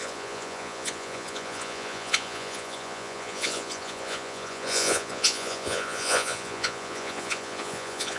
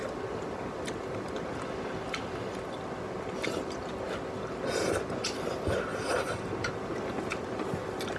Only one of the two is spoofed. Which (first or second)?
first